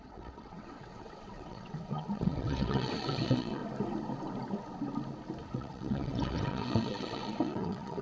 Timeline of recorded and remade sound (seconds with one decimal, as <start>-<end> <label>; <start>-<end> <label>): 0.0-3.6 remade; 3.6-5.5 recorded; 5.5-8.0 remade